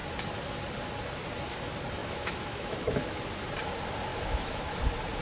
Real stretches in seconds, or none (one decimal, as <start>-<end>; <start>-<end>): 0.0-2.0; 3.2-4.1; 4.8-5.2